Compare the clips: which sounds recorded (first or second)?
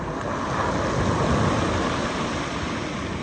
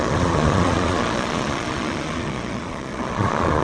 first